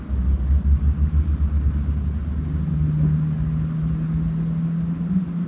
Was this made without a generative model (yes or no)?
yes